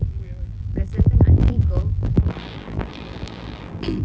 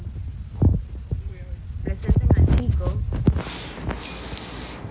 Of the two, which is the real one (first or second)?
second